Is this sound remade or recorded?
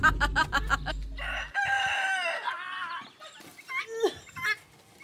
recorded